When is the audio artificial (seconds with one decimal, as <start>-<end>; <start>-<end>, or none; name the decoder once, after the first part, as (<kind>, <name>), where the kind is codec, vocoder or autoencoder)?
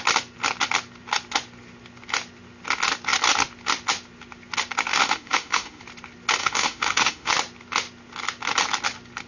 4.9-5.8 (autoencoder, DAC-VAE); 6.4-7.3